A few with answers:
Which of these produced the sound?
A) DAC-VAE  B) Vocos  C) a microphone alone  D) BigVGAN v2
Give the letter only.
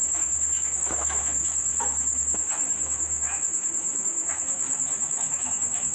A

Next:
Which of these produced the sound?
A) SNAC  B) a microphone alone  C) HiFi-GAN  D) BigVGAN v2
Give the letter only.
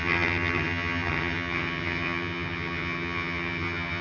C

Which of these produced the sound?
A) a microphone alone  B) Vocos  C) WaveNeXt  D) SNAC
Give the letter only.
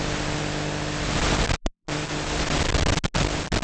A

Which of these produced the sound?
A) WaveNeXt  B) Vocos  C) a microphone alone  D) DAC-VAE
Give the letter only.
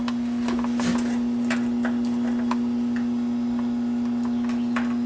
C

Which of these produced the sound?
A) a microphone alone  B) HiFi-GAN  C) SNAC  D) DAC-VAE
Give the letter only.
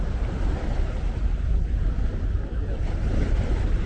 A